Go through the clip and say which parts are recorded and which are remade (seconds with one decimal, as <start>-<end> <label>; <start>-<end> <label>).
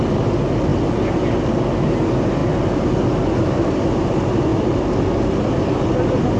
0.0-4.5 recorded; 4.5-5.5 remade; 5.5-6.4 recorded